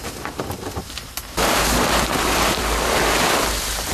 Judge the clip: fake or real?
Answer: fake